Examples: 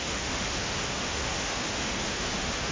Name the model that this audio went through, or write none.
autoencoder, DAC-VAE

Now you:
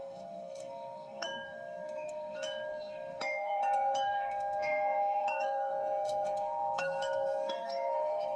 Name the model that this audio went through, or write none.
codec, SNAC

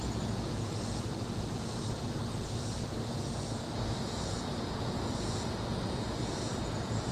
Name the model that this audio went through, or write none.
vocoder, Vocos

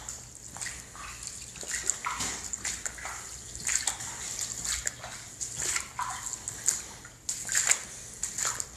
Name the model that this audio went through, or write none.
none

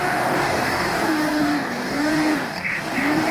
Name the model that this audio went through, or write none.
codec, DAC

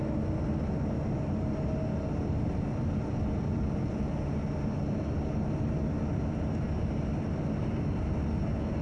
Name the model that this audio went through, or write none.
none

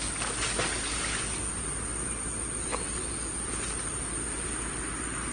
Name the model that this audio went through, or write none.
none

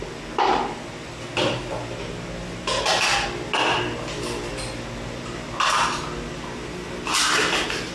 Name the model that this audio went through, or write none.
none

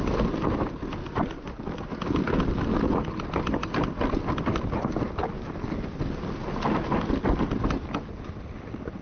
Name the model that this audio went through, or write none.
none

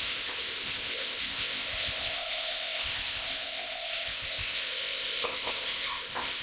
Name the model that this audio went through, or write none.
codec, ZipCodec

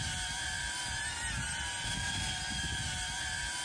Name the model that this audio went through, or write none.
none